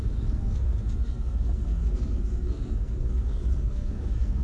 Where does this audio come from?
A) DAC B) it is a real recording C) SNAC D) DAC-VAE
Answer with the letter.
C